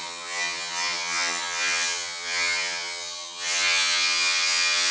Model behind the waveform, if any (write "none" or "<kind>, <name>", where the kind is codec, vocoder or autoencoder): vocoder, HiFi-GAN